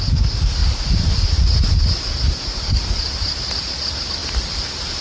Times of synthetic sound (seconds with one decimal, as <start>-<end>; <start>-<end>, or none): 0.6-3.1; 4.2-5.0